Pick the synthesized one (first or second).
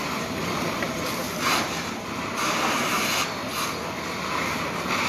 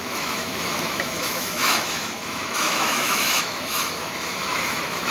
second